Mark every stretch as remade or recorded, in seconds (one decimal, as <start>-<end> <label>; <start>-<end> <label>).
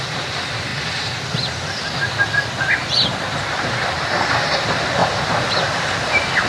0.0-0.7 remade; 0.7-2.6 recorded; 2.6-6.5 remade